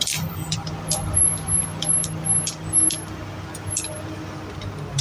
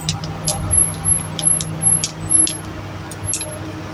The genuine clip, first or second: second